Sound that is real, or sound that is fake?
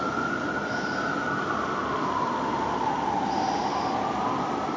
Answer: real